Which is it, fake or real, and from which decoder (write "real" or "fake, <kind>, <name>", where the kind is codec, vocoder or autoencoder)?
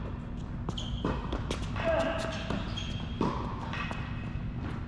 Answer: real